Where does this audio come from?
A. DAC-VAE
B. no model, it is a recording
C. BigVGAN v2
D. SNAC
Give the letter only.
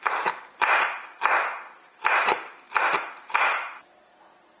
B